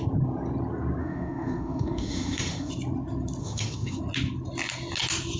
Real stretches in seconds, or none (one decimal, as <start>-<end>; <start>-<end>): 0.0-1.0; 2.7-3.4; 4.0-5.4